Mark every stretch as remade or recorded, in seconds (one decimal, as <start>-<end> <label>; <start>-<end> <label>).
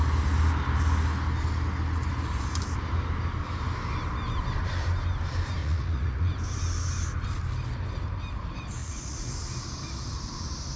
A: 0.0-5.6 recorded; 5.6-6.3 remade; 6.3-8.8 recorded; 8.8-9.3 remade; 9.3-10.8 recorded